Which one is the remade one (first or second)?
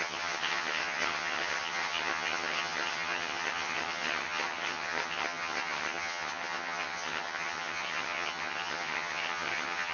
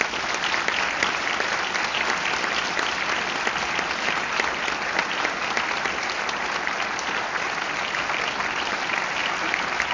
first